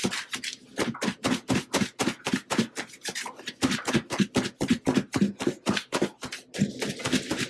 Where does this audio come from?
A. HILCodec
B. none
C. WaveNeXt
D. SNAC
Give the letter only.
B